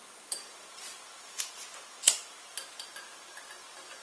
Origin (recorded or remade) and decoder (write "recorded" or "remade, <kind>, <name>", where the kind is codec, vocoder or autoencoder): recorded